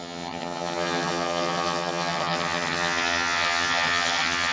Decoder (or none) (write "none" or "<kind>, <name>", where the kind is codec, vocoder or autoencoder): vocoder, HiFi-GAN